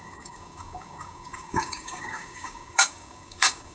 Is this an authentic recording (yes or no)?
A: no